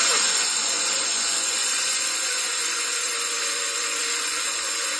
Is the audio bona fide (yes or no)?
no